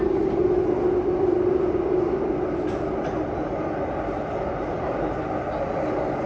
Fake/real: real